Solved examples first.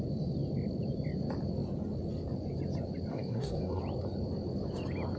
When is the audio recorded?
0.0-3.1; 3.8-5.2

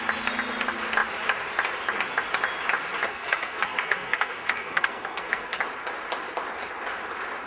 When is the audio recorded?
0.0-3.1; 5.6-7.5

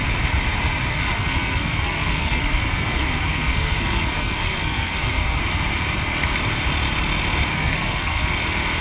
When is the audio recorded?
0.0-0.9; 5.4-7.5; 8.3-8.8

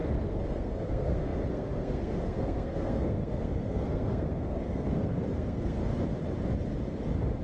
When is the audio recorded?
5.8-7.4

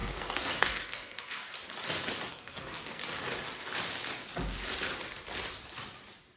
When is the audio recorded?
1.5-2.3; 3.0-6.4

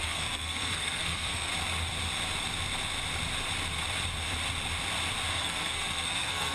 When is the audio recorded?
1.5-5.3